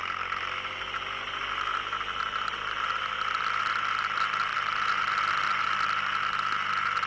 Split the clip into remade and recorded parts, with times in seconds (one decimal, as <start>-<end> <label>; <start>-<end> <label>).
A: 0.0-7.1 recorded